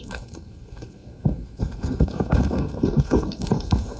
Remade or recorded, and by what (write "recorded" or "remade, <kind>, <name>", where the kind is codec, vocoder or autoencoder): remade, codec, SNAC